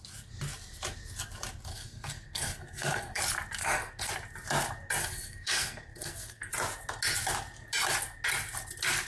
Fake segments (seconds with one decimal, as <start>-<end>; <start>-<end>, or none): 1.7-3.2; 3.6-4.1; 5.0-6.5